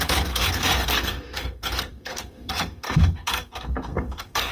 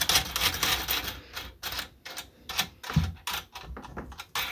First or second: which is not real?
first